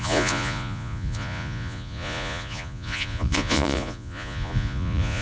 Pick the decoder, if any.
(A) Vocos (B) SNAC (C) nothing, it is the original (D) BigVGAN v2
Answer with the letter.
A